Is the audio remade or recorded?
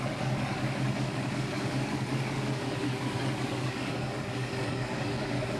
remade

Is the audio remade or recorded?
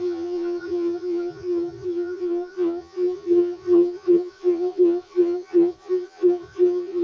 remade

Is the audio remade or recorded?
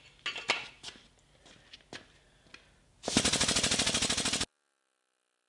recorded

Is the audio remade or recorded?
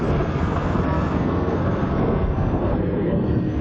remade